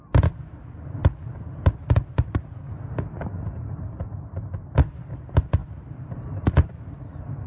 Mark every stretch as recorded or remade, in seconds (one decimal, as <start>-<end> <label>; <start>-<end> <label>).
0.0-5.6 recorded; 5.6-6.8 remade; 6.8-7.5 recorded